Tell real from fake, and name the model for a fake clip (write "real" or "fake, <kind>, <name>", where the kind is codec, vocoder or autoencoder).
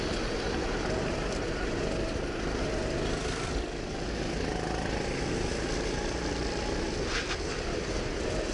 real